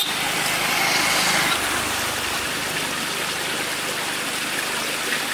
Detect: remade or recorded recorded